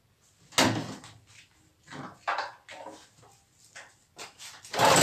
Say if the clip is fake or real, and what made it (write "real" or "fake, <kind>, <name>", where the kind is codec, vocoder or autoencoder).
real